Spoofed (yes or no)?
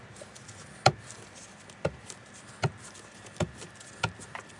no